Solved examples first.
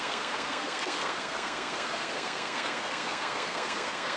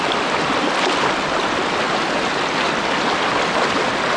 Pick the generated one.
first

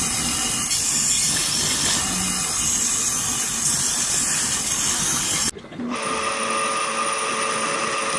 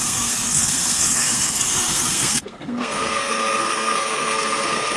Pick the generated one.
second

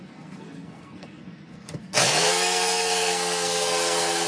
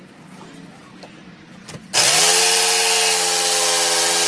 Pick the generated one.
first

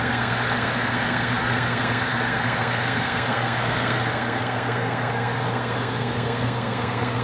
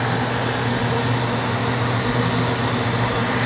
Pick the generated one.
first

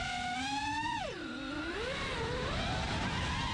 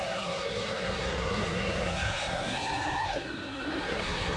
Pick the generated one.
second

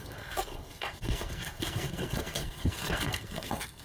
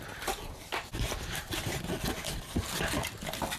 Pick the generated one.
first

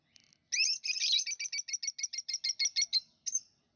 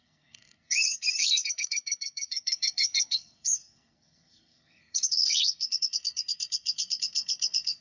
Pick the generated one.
second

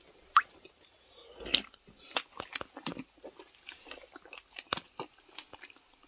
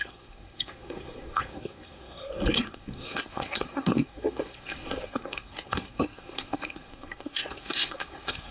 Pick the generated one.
second